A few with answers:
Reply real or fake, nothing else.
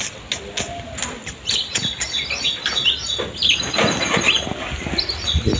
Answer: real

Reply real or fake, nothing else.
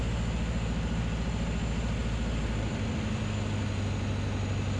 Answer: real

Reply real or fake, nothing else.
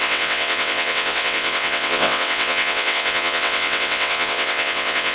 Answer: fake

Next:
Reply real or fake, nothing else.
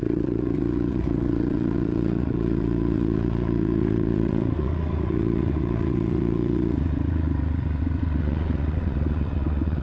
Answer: fake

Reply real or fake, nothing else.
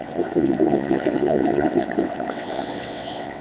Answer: fake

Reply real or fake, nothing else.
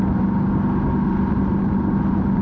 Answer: real